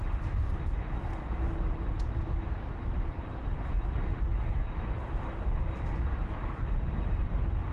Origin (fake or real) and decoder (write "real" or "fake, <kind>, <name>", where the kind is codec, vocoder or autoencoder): real